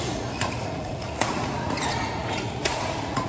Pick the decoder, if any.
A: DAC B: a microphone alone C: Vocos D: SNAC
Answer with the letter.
C